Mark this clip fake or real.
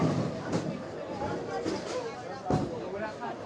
real